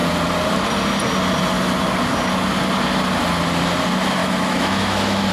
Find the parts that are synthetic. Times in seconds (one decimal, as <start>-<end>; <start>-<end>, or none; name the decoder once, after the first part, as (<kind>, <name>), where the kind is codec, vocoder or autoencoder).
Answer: 4.2-5.3 (autoencoder, DAC-VAE)